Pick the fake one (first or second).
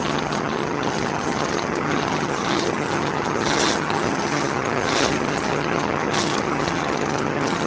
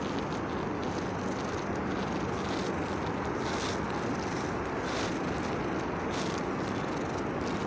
first